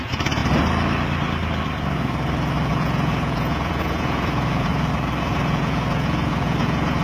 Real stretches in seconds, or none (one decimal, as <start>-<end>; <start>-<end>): 0.4-2.7; 4.7-5.2